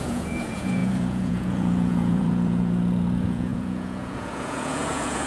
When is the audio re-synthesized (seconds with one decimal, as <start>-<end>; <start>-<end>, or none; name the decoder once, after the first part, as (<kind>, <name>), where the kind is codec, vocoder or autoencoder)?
0.0-5.3 (vocoder, Vocos)